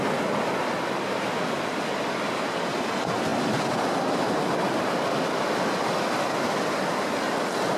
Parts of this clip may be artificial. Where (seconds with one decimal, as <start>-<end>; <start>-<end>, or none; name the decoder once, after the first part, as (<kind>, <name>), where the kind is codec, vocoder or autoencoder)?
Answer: none